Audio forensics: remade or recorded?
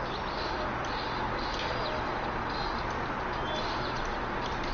recorded